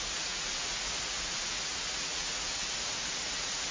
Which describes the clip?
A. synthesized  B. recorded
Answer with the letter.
A